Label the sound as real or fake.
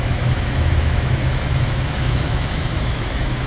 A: fake